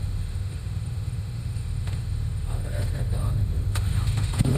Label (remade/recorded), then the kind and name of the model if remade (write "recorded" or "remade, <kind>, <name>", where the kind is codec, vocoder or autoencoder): remade, autoencoder, DAC-VAE